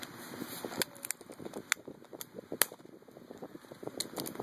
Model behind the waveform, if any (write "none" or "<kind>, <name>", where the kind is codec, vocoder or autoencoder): none